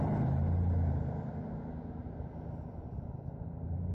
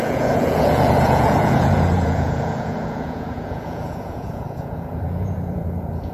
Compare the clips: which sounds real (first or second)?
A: first